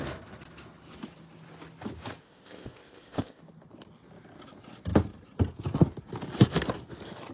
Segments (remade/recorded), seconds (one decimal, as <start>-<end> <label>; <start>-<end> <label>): 0.0-2.2 recorded; 2.2-3.4 remade; 3.4-7.3 recorded